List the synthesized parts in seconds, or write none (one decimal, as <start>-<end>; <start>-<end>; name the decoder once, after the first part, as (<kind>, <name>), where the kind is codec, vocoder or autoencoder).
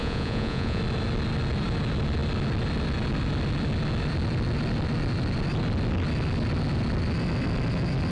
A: 0.0-0.8 (vocoder, Vocos)